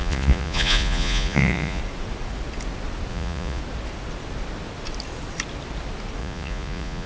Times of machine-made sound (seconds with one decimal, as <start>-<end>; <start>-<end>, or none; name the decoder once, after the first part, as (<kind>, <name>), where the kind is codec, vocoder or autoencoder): 0.0-1.8 (vocoder, Vocos); 3.1-3.6; 6.2-7.1